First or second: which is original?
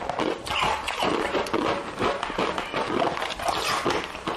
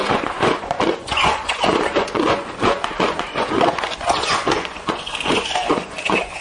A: first